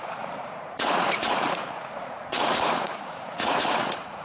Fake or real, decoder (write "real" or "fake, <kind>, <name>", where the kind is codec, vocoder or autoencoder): fake, vocoder, Vocos